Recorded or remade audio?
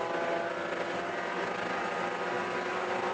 recorded